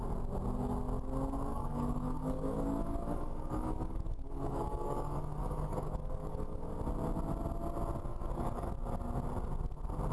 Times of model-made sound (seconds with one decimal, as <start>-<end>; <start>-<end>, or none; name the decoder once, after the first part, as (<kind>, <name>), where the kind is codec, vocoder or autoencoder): 1.5-6.7 (codec, DAC); 8.1-8.7